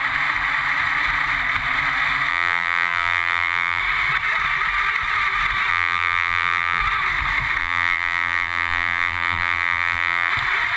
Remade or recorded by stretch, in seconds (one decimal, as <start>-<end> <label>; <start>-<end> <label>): 0.0-2.3 recorded; 2.3-3.8 remade; 3.8-5.7 recorded; 5.7-6.8 remade; 6.8-7.6 recorded; 7.6-10.3 remade; 10.3-10.8 recorded